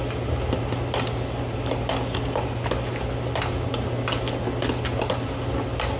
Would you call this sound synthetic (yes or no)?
no